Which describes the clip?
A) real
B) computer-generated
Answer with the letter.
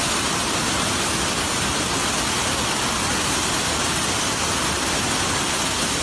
A